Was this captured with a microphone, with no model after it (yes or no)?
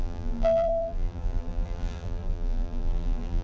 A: no